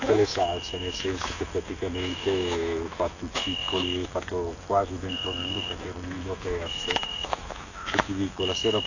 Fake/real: fake